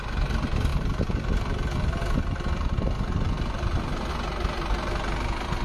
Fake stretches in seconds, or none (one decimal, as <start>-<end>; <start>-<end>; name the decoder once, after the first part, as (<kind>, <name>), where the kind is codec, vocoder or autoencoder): none